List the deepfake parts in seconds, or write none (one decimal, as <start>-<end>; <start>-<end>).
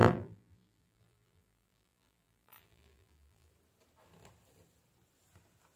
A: 0.0-3.5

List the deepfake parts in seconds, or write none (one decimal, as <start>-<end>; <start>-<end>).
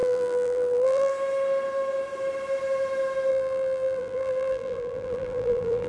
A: 0.0-1.1; 3.3-5.9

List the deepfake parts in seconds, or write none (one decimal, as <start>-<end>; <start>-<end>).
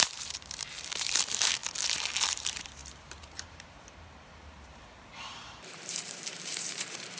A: 0.0-1.6; 2.3-7.2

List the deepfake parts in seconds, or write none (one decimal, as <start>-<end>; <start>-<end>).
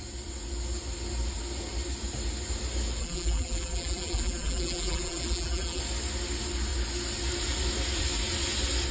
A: 3.0-5.8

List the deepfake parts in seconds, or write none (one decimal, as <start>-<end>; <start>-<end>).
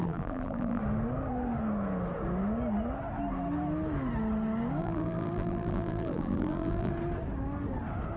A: 0.0-0.8; 4.8-6.9